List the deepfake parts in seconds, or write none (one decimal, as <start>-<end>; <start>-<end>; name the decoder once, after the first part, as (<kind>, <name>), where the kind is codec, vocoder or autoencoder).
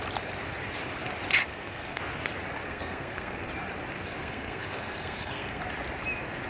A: 1.4-2.0 (codec, SNAC); 2.6-3.5; 4.2-5.6